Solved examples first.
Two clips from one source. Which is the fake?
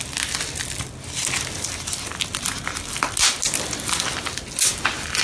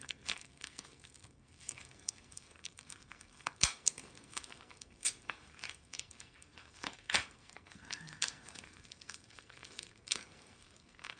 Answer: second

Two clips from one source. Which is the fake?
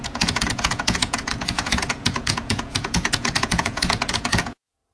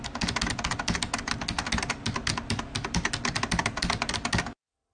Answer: first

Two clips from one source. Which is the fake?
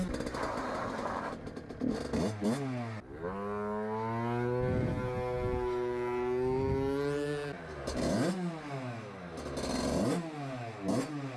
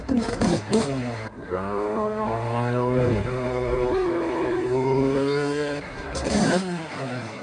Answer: second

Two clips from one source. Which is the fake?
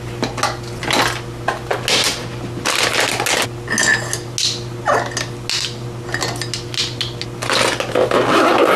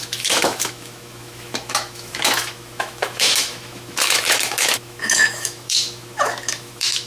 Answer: second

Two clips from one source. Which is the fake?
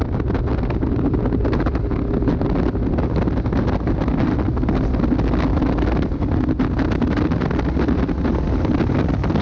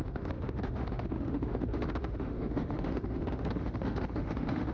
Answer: second